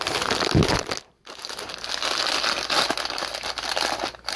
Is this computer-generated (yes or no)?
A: no